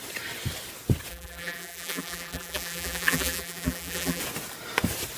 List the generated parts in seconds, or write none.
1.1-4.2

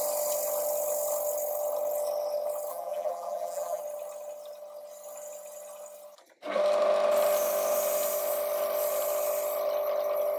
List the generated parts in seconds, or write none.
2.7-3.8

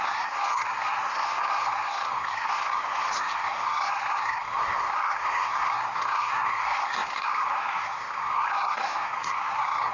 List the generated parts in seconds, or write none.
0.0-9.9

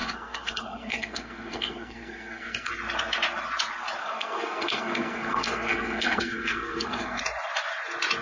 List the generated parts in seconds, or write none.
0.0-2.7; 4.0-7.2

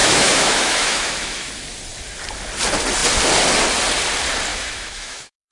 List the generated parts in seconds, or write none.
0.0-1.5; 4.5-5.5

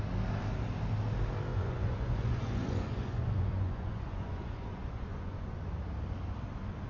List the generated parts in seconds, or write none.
1.5-5.6